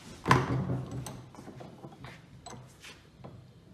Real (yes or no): yes